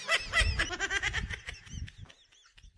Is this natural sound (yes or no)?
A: yes